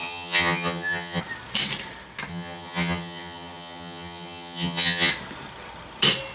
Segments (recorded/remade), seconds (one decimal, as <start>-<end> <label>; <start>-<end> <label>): 0.0-1.2 remade; 1.2-2.3 recorded; 2.3-5.1 remade; 5.1-6.3 recorded